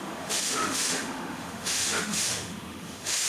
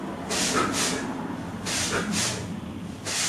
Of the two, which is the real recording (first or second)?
second